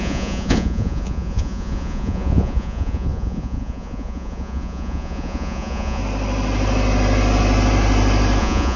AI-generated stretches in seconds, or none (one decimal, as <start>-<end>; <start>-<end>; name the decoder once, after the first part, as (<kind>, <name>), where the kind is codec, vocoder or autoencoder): 0.0-6.0 (vocoder, Vocos); 8.4-8.8

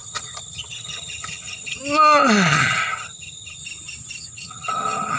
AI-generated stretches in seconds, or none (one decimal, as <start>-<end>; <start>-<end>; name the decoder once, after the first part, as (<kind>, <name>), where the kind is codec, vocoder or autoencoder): 0.0-1.8 (vocoder, HiFi-GAN); 2.5-3.6; 4.3-5.2

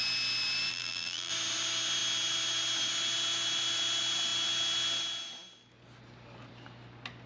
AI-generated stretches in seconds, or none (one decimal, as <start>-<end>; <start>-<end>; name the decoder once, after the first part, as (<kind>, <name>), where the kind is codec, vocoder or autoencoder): 0.7-1.3 (vocoder, BigVGAN v2)

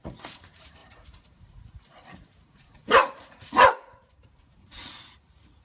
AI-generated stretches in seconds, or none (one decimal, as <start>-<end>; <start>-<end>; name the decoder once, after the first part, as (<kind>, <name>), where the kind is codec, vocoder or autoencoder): 0.0-5.6 (vocoder, Vocos)

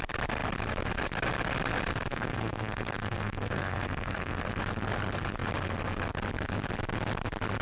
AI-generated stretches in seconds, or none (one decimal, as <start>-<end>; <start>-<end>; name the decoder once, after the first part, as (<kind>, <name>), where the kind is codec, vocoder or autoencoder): 2.1-4.4 (codec, SNAC)

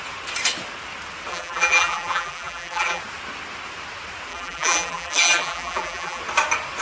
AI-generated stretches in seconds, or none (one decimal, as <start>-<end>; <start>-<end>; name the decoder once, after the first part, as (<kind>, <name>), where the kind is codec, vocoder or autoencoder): 1.3-3.0 (vocoder, BigVGAN v2); 4.3-6.2